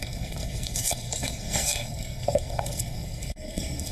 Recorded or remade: remade